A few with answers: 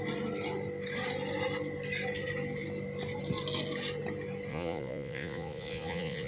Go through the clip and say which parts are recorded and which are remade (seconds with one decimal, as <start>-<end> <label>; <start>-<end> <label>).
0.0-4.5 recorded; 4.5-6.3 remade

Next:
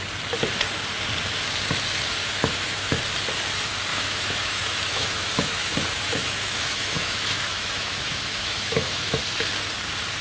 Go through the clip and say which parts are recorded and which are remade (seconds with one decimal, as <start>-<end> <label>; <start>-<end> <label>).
0.0-2.2 recorded; 2.2-3.0 remade; 3.0-3.9 recorded; 3.9-9.2 remade; 9.2-10.2 recorded

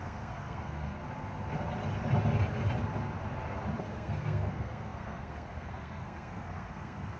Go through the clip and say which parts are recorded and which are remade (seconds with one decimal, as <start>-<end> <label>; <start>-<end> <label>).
0.0-1.0 remade; 1.0-3.8 recorded; 3.8-7.2 remade